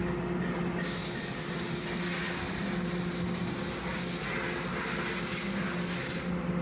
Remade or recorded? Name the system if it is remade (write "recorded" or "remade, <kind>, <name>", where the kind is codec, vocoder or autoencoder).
recorded